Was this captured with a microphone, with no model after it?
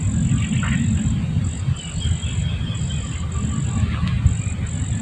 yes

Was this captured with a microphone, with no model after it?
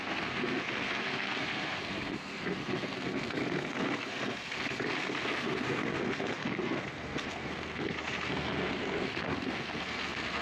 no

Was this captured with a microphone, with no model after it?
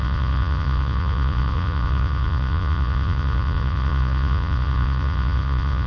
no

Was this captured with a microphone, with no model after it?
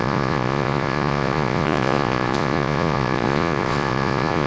no